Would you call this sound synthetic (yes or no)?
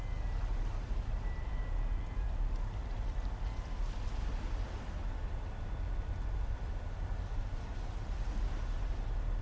no